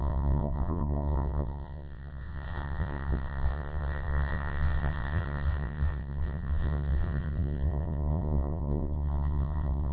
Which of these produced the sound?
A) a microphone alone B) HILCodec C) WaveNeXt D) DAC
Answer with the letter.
C